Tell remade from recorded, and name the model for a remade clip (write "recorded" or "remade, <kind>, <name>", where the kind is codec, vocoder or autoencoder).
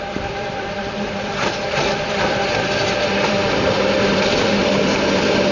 remade, vocoder, BigVGAN v2